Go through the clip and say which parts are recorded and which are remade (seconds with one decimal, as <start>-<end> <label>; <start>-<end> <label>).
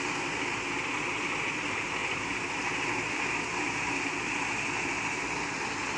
0.0-6.0 recorded